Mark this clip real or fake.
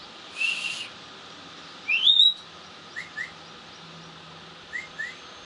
real